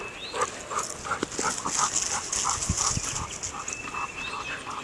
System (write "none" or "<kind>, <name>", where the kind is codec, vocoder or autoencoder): none